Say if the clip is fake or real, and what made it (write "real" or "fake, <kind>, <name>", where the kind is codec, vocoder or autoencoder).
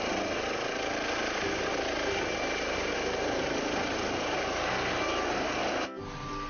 real